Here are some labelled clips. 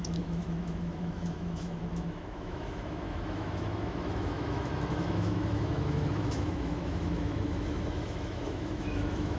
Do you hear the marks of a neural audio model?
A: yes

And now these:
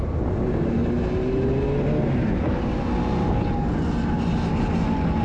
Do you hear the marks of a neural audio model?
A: no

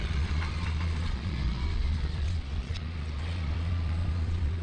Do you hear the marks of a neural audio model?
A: yes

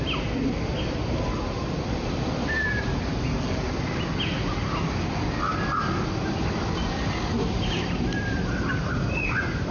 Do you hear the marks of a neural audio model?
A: no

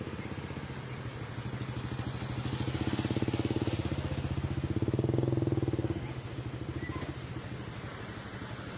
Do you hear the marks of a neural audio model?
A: no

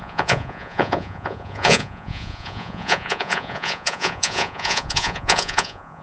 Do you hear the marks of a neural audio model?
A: yes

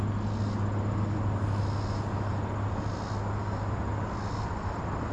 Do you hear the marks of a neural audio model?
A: no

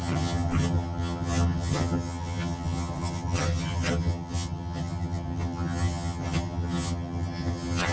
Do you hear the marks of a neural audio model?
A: yes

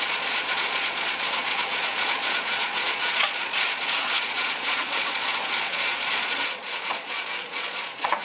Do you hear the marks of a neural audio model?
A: yes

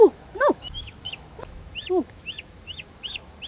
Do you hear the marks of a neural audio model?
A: yes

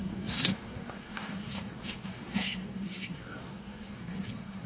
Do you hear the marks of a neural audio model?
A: yes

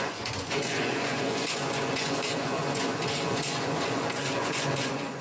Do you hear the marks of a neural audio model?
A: yes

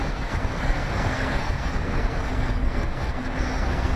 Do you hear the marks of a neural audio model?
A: yes